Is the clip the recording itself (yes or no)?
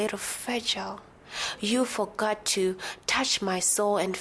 yes